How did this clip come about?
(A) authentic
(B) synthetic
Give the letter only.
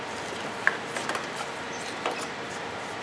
A